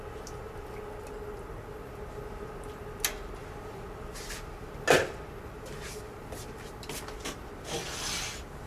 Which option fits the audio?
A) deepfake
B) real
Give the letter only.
B